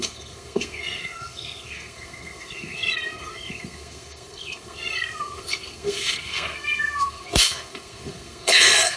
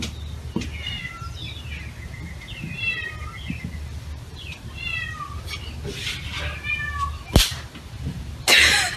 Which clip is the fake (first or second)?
first